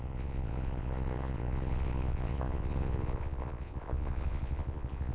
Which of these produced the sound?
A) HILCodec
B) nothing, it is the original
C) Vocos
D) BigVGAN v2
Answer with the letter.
C